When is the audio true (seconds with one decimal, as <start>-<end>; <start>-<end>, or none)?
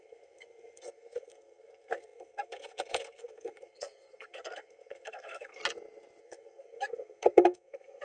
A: 5.6-6.2